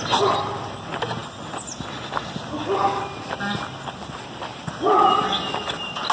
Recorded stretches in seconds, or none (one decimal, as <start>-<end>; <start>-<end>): 0.0-6.1